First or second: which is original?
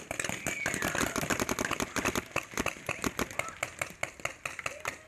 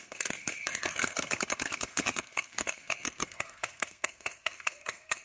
first